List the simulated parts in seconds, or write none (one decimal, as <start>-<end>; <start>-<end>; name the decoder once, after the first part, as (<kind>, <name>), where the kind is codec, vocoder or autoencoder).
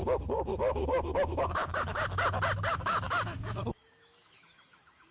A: 0.6-2.0 (autoencoder, DAC-VAE); 2.7-5.1